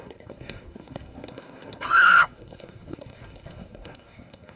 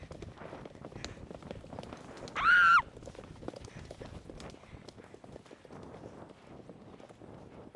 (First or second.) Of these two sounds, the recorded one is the second